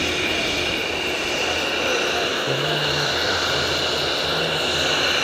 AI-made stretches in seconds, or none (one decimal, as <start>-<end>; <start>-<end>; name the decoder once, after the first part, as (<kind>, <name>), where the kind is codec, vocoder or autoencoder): 2.3-3.1 (autoencoder, DAC-VAE)